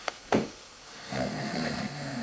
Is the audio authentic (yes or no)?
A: no